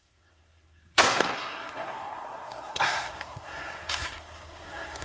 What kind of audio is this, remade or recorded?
remade